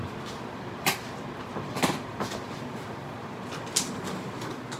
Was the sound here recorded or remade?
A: remade